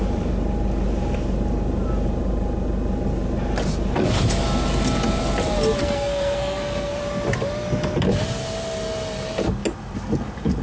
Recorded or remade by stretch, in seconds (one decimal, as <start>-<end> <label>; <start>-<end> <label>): 0.0-5.8 recorded; 5.8-7.0 remade; 7.0-10.6 recorded